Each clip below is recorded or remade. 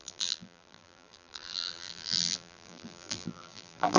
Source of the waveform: remade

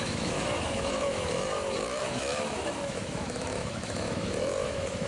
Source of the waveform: remade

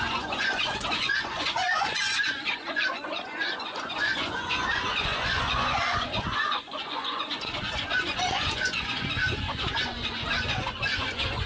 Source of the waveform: remade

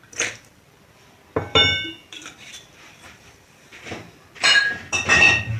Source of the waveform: remade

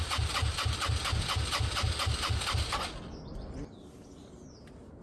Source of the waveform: recorded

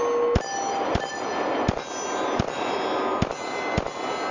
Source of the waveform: recorded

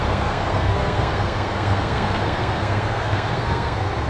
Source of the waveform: remade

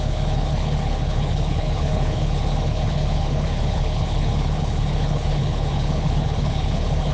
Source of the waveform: remade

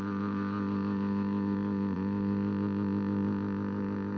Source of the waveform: remade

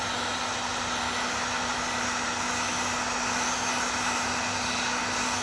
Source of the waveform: recorded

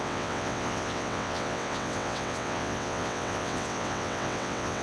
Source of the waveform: remade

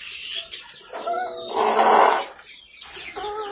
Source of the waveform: recorded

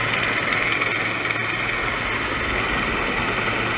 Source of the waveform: recorded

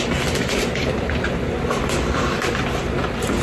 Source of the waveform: recorded